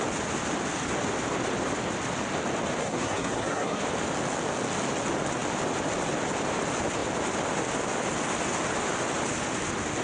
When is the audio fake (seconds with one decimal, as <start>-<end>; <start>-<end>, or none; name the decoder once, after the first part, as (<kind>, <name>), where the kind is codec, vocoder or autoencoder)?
2.8-3.8 (codec, SNAC)